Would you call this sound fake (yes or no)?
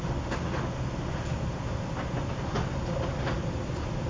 no